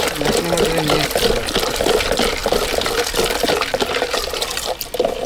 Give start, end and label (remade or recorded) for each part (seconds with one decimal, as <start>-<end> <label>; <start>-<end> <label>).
0.0-5.3 recorded

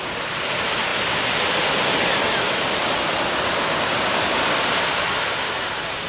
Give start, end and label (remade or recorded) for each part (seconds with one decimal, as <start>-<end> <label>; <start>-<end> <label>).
0.0-6.1 remade